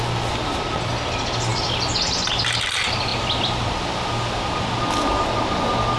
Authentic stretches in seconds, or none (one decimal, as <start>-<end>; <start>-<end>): 0.0-6.0